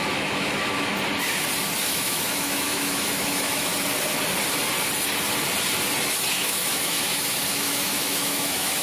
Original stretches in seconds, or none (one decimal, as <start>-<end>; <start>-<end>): 0.9-1.8; 3.7-6.3